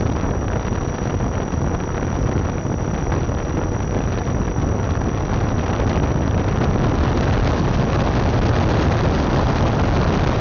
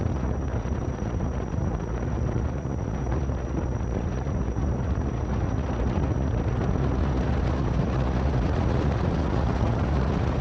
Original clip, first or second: first